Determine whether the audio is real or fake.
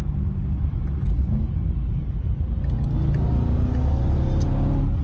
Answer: real